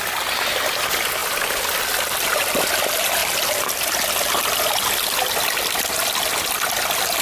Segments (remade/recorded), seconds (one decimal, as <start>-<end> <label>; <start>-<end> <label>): 0.0-7.2 recorded